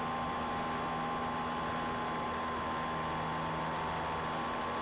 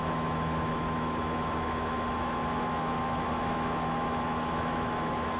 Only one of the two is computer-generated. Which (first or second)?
second